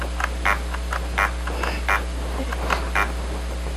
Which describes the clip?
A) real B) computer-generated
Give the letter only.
A